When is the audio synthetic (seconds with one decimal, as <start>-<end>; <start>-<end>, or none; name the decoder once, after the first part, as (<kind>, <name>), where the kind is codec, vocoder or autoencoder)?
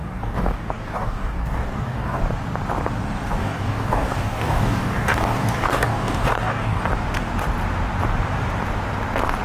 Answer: 0.0-2.2 (codec, DAC); 3.4-6.8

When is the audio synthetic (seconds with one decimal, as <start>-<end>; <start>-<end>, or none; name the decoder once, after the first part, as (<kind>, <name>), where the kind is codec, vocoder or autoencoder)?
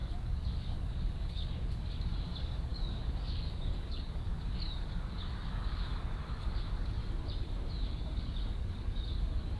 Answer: 0.0-7.0 (codec, DAC); 7.9-9.6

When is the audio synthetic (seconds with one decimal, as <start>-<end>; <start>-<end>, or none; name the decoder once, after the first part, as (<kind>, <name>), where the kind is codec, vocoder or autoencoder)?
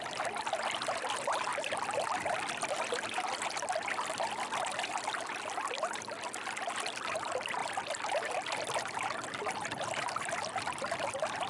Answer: none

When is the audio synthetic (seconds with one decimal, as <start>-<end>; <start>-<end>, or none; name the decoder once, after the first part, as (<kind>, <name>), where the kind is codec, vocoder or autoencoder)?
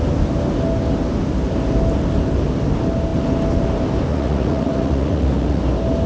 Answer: 4.1-5.6 (vocoder, Vocos)